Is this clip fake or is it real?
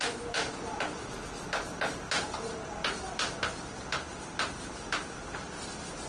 real